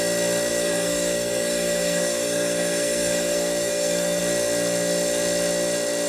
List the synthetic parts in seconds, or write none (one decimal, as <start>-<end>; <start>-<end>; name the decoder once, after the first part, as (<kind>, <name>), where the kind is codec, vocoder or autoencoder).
0.5-4.2 (codec, SNAC)